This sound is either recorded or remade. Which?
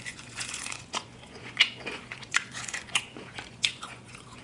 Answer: remade